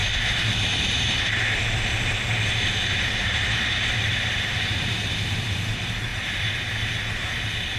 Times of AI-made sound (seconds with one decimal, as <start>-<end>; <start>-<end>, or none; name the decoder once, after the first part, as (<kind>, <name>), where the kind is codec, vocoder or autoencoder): 1.9-5.6 (vocoder, BigVGAN v2); 6.1-7.3